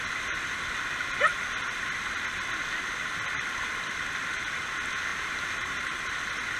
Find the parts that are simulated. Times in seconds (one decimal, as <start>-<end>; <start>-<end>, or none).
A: 5.1-6.1

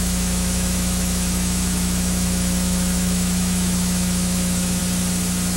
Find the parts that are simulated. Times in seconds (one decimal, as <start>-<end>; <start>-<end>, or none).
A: 0.0-4.8

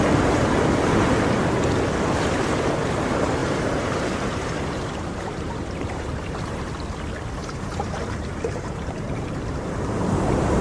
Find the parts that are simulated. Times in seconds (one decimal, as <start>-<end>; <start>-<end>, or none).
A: 3.4-6.7; 7.4-9.3

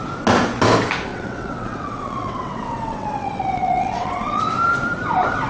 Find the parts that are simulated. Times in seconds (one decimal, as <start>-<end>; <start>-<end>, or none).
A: 1.1-4.4